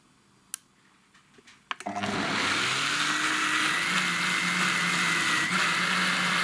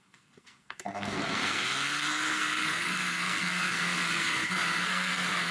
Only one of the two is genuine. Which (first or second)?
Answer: first